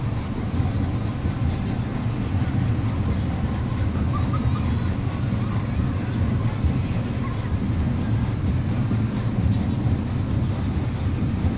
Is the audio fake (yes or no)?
no